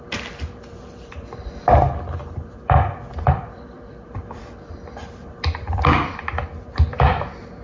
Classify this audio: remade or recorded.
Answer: remade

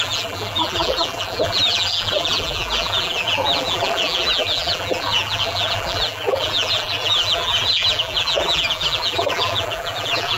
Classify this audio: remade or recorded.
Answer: remade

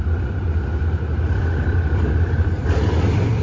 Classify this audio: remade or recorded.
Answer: remade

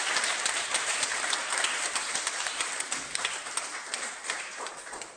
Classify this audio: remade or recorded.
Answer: remade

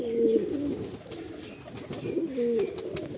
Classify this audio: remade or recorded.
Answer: recorded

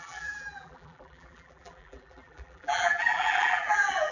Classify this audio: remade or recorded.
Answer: remade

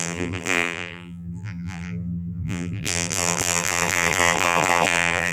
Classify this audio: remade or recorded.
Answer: remade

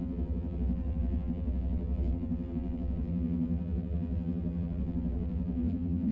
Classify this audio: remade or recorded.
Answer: remade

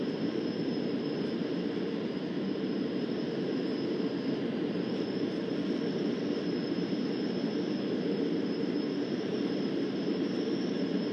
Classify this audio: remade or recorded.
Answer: remade